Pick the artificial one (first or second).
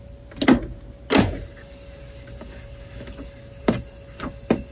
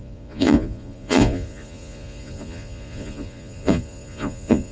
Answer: second